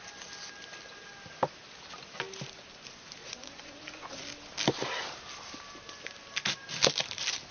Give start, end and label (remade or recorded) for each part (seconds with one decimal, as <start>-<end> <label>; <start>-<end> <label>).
0.0-3.2 recorded; 3.2-4.1 remade; 4.1-7.5 recorded